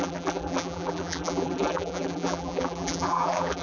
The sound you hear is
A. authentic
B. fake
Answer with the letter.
B